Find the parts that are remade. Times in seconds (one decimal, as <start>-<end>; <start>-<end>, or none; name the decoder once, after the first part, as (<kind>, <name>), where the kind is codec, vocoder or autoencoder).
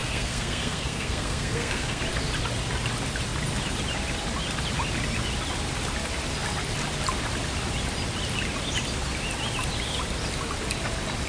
0.0-2.0 (codec, SNAC)